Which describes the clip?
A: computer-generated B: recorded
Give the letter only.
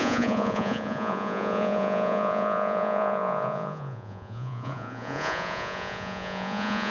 A